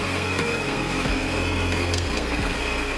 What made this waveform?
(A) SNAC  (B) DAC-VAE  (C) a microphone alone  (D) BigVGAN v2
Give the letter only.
A